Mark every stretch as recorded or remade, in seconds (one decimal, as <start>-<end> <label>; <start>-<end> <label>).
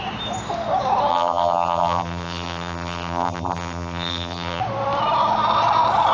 0.0-1.1 recorded; 1.1-4.6 remade; 4.6-6.1 recorded